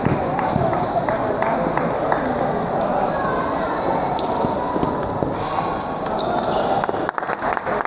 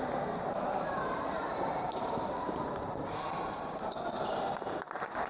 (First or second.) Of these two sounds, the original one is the first